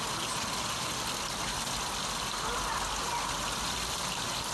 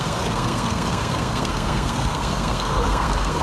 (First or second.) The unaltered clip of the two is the first